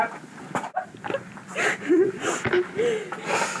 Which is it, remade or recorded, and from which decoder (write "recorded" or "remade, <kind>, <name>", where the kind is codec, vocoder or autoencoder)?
recorded